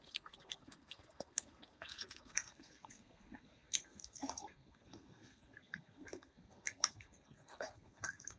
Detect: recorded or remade remade